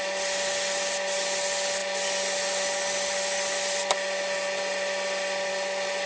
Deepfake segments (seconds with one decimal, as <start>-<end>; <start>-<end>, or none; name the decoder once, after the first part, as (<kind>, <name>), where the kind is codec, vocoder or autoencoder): none